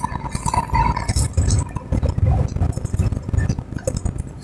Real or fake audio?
real